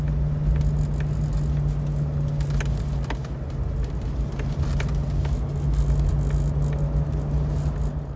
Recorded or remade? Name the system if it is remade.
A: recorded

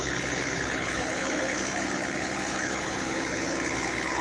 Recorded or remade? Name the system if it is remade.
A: remade, codec, HILCodec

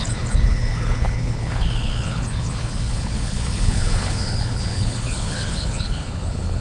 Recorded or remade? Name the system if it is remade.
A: remade, codec, HILCodec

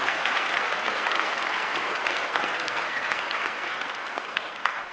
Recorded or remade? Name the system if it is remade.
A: remade, codec, SNAC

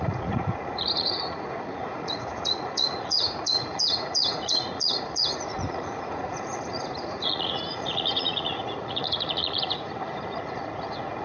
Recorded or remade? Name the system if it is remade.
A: remade, vocoder, Vocos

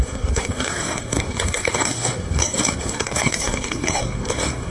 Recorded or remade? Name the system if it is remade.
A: remade, codec, SNAC